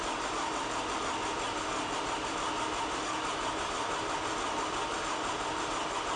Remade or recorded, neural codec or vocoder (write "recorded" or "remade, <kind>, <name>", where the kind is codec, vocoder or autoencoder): recorded